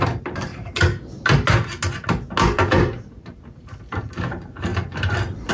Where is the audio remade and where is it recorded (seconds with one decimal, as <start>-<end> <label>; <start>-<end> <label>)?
0.0-0.5 remade; 0.5-3.8 recorded; 3.8-5.5 remade